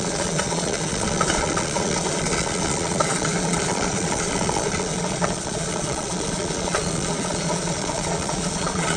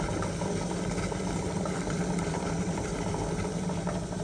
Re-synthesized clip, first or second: first